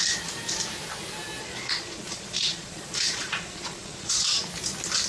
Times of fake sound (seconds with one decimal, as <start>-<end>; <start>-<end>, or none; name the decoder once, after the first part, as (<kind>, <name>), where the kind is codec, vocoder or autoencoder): 1.4-4.5 (vocoder, Vocos)